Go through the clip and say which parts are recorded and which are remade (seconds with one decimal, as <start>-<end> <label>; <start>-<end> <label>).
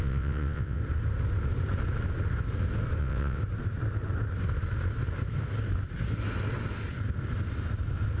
0.0-0.8 remade; 0.8-3.0 recorded; 3.0-3.4 remade; 3.4-8.2 recorded